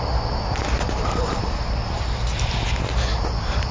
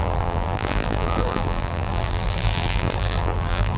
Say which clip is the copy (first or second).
second